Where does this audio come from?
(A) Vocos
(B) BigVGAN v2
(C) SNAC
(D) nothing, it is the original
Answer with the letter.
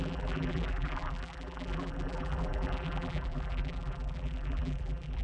B